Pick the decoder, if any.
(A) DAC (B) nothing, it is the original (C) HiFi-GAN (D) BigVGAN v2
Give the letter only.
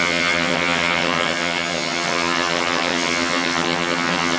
C